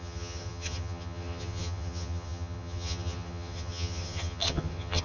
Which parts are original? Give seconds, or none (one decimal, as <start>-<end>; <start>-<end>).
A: none